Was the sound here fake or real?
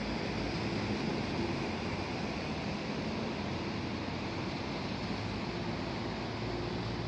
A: real